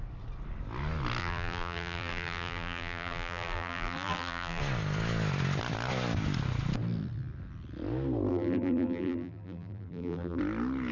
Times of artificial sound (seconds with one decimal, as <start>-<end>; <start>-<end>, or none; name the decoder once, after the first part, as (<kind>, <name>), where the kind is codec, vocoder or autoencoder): 1.2-4.6 (vocoder, BigVGAN v2); 8.3-10.4